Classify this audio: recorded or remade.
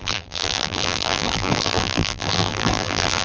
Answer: remade